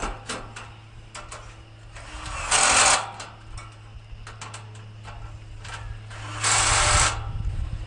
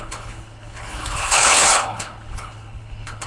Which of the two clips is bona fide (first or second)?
first